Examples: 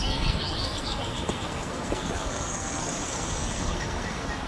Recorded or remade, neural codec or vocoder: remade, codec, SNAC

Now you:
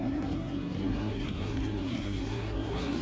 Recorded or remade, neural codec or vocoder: remade, codec, SNAC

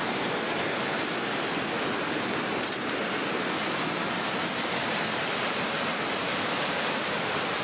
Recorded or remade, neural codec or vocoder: recorded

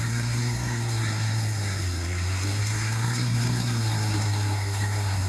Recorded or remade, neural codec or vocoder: remade, codec, SNAC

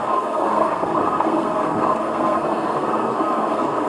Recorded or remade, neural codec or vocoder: remade, codec, SNAC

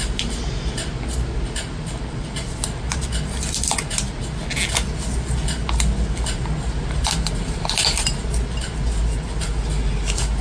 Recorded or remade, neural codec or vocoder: recorded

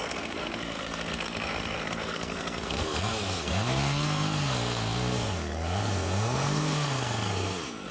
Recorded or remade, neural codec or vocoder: remade, codec, SNAC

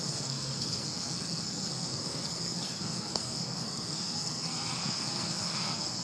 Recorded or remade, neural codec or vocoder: remade, codec, SNAC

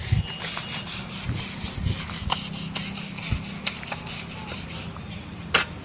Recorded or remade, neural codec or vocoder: recorded